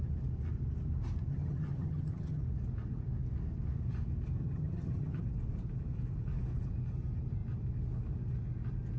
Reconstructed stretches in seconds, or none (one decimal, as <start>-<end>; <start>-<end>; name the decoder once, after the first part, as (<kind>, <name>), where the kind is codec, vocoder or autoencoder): 1.3-2.4 (vocoder, HiFi-GAN); 4.4-5.2